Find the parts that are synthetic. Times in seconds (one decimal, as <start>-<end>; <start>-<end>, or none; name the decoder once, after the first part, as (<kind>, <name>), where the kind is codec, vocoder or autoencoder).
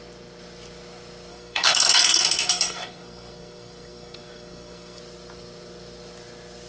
1.3-5.0 (codec, SNAC)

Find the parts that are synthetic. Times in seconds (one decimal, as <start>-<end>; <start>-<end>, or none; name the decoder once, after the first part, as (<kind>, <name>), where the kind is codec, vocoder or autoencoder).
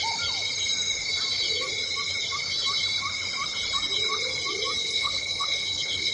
4.8-6.1 (codec, HILCodec)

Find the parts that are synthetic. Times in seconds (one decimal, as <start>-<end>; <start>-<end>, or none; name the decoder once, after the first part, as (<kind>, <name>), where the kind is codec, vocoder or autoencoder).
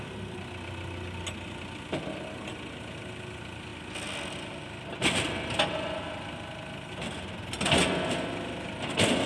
none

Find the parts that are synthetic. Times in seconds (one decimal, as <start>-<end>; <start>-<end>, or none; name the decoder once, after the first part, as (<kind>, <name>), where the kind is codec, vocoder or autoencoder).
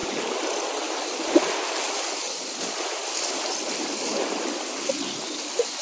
none